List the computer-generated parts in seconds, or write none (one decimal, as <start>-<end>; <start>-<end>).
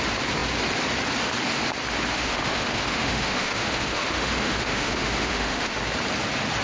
2.1-5.8